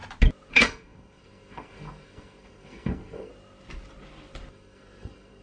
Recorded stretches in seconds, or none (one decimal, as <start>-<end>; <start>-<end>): 0.0-0.5; 3.3-4.5